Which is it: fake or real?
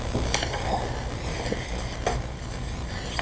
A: real